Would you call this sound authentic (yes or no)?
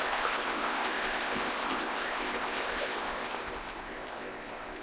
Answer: no